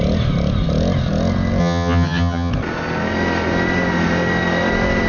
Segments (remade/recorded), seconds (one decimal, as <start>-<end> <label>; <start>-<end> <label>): 0.0-1.6 recorded; 1.6-2.5 remade; 2.5-5.1 recorded